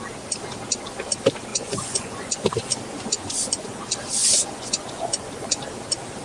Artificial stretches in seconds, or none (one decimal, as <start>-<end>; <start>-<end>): 1.5-2.3; 3.1-3.8; 4.2-5.3